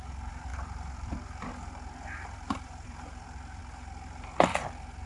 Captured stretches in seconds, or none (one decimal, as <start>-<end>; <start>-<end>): 0.0-0.5; 3.6-5.1